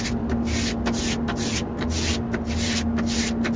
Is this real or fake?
real